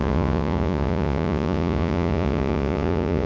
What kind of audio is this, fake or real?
fake